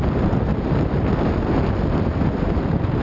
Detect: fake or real real